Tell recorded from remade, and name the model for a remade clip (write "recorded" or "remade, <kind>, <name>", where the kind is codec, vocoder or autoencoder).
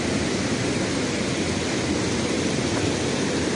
recorded